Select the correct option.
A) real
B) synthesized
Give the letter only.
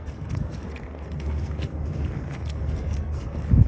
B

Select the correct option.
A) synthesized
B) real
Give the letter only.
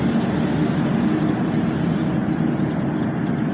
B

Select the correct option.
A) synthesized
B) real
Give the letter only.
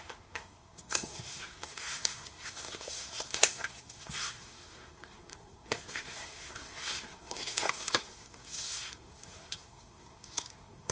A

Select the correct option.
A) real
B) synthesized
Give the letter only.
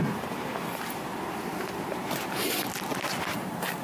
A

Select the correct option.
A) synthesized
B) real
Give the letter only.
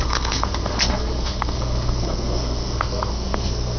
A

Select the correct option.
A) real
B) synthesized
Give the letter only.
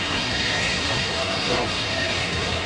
B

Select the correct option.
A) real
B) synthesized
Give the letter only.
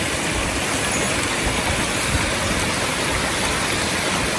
A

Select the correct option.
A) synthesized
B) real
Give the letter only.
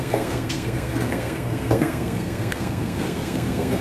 A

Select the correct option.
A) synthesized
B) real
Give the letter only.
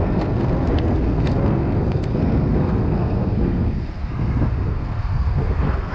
A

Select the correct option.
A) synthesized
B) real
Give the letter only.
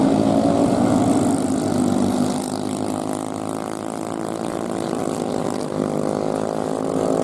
B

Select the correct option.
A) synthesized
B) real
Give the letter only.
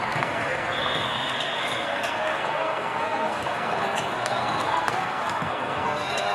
A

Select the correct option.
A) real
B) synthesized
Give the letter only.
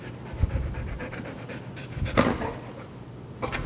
A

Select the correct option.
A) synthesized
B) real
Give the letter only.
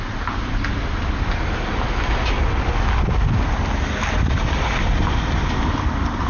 B